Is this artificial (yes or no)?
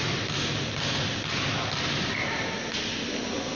no